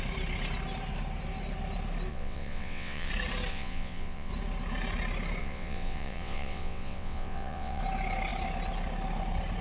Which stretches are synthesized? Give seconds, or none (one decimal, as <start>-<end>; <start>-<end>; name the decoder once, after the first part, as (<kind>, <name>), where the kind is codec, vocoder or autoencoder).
2.1-3.1 (vocoder, WaveNeXt); 3.5-4.3; 5.4-7.8